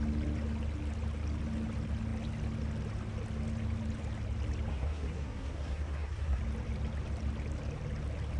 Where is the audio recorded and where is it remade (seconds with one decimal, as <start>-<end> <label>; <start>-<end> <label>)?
0.0-4.7 recorded; 4.7-6.4 remade; 6.4-8.4 recorded